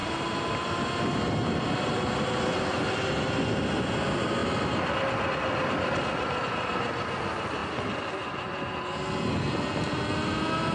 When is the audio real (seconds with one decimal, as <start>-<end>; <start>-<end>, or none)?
0.0-10.7